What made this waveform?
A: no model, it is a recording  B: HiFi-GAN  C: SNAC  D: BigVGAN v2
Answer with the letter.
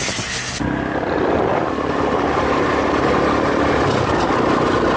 A